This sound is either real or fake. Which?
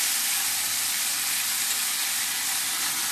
real